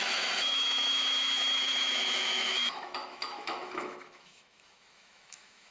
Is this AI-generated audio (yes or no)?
yes